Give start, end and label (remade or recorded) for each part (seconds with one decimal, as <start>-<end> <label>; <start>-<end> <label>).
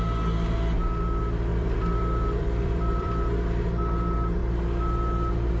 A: 0.0-1.5 recorded; 1.5-3.1 remade; 3.1-5.6 recorded